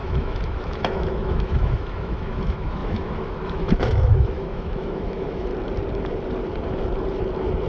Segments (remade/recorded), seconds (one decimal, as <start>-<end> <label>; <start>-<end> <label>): 0.0-5.5 remade; 5.5-7.7 recorded